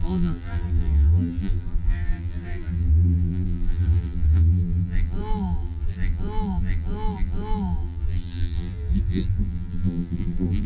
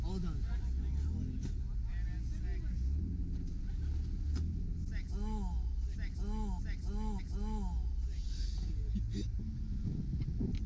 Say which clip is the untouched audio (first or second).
second